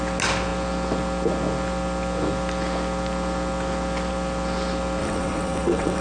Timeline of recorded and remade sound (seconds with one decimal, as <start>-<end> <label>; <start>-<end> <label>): 0.0-5.0 recorded; 5.0-6.0 remade